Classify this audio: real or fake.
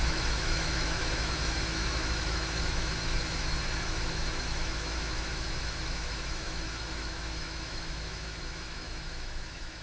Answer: fake